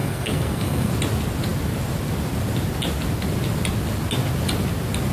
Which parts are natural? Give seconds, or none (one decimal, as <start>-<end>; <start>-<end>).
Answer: 0.9-5.1